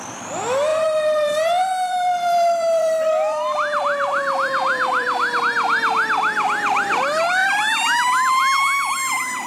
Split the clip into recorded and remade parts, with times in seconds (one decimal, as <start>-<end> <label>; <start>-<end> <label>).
0.0-0.7 recorded; 0.7-5.4 remade; 5.4-7.4 recorded; 7.4-9.5 remade